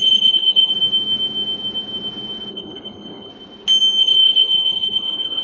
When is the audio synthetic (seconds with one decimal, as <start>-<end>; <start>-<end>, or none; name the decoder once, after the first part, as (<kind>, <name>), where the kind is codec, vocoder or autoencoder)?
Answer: 0.0-0.7 (codec, HILCodec); 2.5-3.3; 4.0-5.4